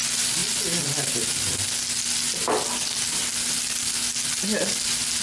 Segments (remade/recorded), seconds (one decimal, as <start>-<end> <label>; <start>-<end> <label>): 0.0-5.2 recorded